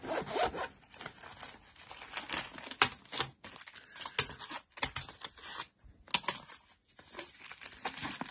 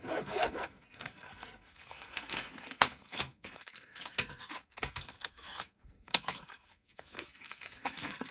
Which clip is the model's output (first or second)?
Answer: second